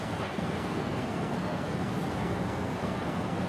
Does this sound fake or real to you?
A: fake